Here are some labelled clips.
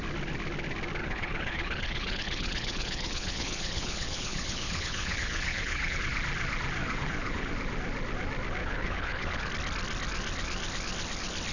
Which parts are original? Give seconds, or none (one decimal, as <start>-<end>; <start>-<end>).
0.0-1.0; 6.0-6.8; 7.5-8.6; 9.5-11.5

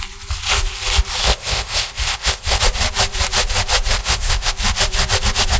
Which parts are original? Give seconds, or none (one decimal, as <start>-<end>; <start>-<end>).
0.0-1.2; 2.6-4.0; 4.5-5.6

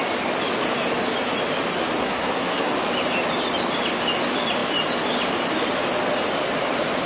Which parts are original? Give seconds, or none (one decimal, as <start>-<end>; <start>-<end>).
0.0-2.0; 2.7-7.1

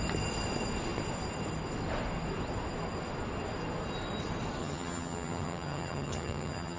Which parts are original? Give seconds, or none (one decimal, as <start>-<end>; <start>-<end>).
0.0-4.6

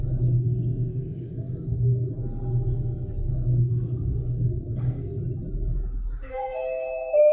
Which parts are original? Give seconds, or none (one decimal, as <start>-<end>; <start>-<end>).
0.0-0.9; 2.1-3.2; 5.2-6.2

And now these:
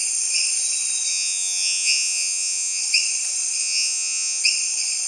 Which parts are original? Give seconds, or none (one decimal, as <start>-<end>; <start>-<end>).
0.0-1.1; 2.8-3.6; 4.4-5.1